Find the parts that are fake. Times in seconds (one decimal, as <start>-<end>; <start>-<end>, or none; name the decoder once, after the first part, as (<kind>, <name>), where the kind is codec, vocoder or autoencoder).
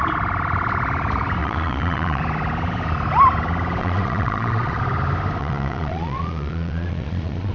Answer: 1.4-2.2 (vocoder, Vocos); 3.8-4.8; 5.4-7.5